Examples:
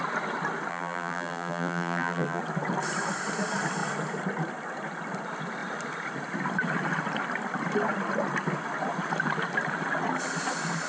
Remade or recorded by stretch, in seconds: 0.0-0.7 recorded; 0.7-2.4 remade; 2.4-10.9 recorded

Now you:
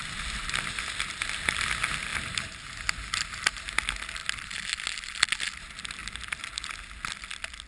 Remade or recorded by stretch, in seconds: 0.0-7.7 recorded

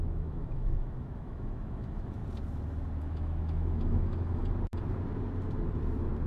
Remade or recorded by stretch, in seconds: 0.0-2.2 remade; 2.2-3.0 recorded; 3.0-4.4 remade; 4.4-6.3 recorded

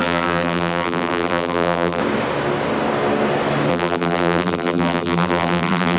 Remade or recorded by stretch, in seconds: 0.0-2.0 remade; 2.0-3.7 recorded; 3.7-6.0 remade

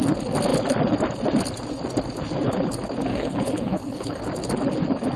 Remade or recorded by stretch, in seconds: 0.0-3.1 recorded; 3.1-4.2 remade; 4.2-5.2 recorded